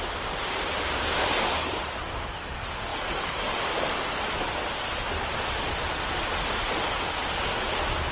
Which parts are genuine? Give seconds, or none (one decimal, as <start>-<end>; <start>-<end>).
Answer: 0.0-8.1